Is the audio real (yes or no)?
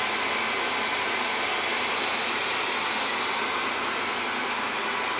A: yes